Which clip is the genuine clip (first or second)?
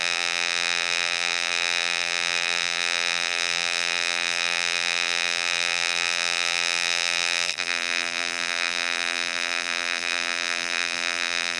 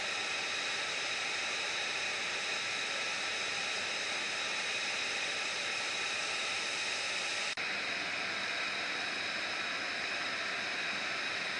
second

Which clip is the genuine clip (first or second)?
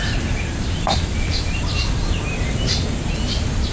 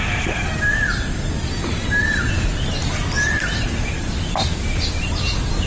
second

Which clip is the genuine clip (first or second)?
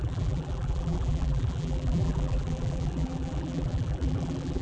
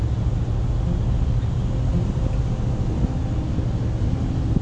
second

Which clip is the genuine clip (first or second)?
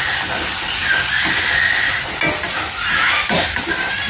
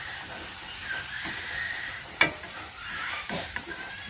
first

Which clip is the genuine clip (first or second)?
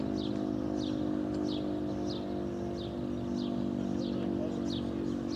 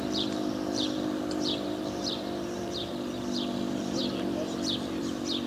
first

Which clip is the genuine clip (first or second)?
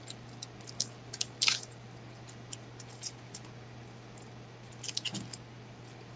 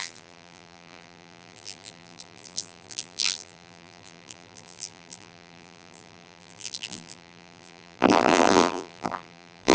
first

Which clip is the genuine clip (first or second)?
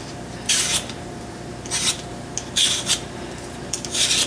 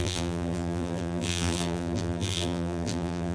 first